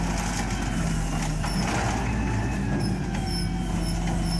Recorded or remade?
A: recorded